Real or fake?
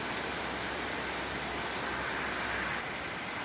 real